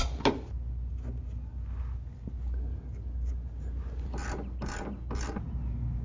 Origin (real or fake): real